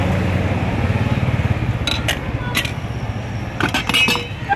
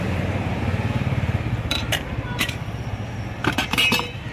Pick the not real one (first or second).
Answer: second